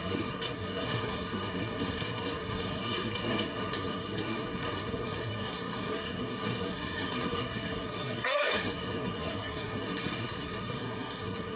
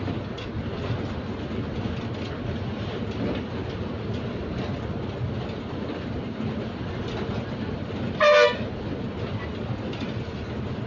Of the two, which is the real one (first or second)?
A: second